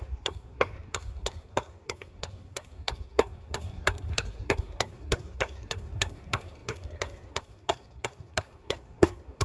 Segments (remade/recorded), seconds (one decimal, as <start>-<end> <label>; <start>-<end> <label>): 0.0-9.4 remade